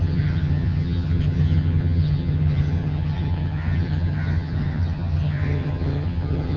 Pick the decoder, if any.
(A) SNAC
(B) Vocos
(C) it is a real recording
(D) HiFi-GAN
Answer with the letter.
D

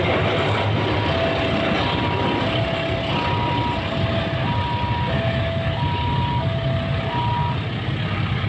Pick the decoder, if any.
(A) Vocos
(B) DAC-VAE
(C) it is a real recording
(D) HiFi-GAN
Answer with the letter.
C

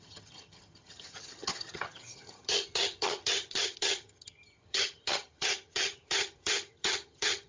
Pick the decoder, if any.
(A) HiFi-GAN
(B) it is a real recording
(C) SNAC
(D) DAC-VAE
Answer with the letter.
A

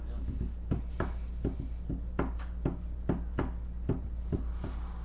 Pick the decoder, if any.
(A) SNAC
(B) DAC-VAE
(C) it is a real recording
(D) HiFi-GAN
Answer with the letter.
C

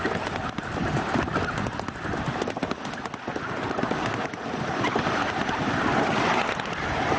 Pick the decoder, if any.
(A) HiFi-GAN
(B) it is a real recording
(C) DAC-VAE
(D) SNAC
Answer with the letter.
B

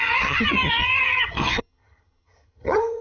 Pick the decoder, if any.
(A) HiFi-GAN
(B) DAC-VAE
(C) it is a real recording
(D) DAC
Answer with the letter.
A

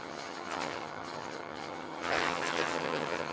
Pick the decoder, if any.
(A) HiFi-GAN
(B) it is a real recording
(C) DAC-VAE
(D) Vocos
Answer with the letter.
A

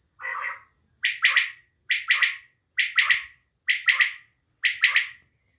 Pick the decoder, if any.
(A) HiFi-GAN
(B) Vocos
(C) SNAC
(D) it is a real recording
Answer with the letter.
D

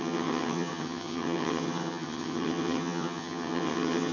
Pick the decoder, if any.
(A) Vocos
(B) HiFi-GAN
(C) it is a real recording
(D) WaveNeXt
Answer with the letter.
B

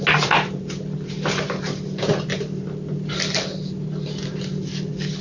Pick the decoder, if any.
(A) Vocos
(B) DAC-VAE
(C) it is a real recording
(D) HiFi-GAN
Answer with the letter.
C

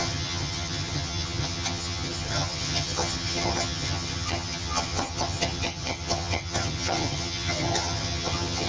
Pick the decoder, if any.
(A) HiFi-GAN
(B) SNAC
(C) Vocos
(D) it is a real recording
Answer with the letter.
A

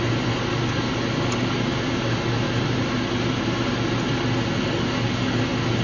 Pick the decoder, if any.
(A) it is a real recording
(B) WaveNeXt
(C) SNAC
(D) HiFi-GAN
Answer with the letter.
A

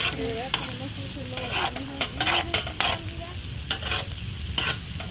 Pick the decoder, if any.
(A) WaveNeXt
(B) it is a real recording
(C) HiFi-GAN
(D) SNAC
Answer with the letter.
B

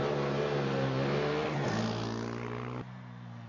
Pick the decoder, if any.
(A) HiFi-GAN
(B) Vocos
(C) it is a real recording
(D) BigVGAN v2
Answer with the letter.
C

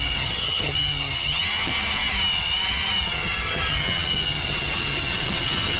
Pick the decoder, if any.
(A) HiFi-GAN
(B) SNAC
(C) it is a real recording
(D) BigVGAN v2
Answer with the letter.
A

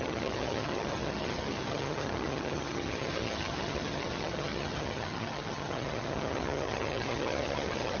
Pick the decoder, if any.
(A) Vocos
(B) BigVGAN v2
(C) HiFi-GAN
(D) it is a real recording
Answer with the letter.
C